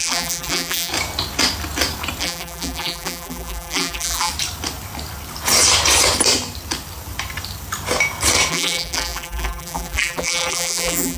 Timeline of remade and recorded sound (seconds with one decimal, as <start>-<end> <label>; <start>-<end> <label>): 0.0-0.9 remade; 0.9-2.2 recorded; 2.2-4.3 remade; 4.3-8.5 recorded; 8.5-11.2 remade